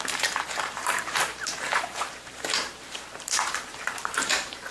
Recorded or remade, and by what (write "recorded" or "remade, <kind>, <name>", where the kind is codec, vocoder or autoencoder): remade, vocoder, BigVGAN v2